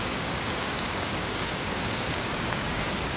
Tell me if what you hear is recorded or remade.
remade